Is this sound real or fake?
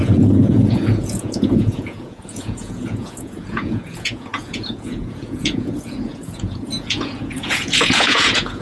fake